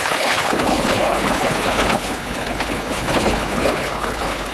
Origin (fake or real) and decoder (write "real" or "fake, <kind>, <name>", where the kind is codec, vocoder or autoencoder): fake, codec, HILCodec